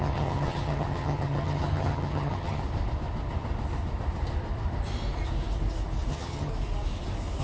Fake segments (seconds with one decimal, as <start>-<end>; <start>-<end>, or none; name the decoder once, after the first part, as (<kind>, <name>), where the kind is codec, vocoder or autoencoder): 0.0-2.6 (vocoder, HiFi-GAN); 6.1-6.5